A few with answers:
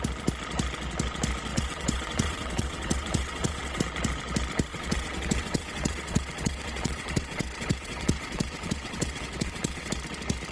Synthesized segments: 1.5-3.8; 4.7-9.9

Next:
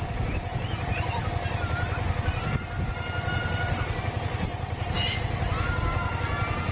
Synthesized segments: none